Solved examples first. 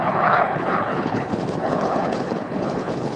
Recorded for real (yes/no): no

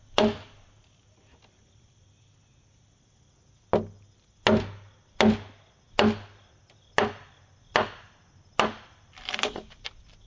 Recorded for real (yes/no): yes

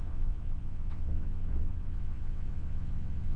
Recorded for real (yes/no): no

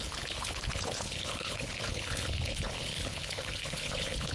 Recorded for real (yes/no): no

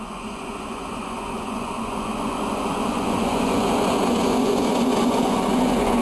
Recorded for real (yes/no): no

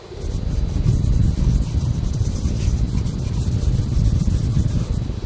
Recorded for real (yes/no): yes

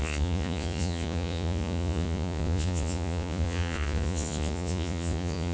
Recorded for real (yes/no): no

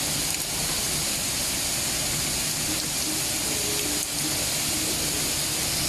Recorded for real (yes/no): yes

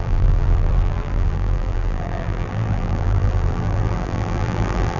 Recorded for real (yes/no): no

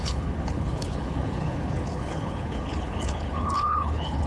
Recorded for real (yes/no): no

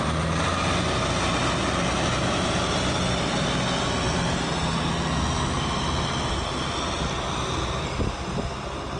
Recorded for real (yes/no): yes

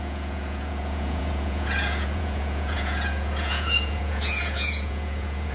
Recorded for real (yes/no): no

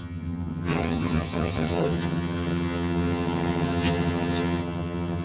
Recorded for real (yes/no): no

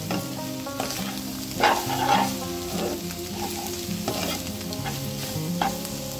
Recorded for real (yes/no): yes